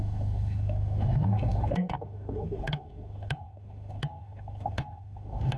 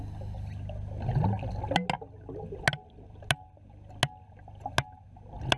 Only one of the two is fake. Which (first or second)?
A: first